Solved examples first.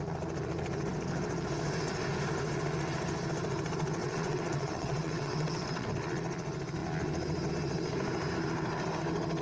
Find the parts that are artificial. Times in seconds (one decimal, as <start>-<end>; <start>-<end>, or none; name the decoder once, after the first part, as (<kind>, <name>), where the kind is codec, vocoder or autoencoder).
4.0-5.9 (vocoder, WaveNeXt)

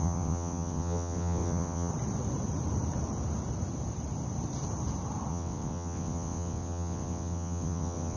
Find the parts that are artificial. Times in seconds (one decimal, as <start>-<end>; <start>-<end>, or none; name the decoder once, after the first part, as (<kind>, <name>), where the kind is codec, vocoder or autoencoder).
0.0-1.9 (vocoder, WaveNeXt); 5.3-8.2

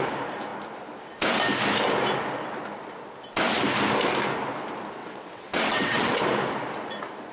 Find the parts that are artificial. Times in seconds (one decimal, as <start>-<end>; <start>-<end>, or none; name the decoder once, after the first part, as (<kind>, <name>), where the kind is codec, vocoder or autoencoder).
5.0-6.2 (vocoder, WaveNeXt)